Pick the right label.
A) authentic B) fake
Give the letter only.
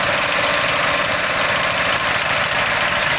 A